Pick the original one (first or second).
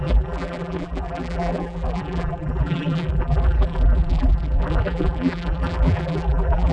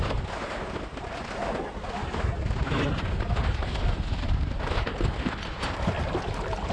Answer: second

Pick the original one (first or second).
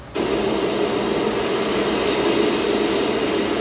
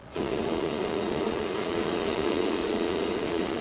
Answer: first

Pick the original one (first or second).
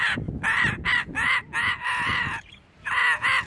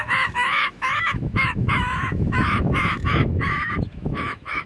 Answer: first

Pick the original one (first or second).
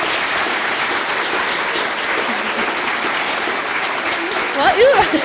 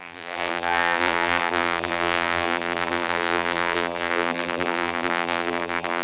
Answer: first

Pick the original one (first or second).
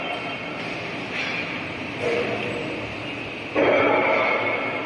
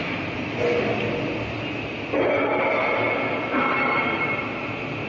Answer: second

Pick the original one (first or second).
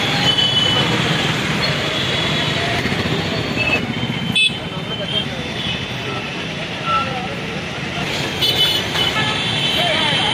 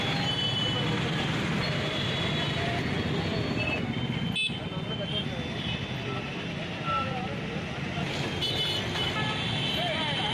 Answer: second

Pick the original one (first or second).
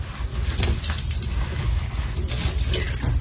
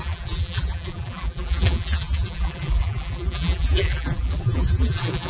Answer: first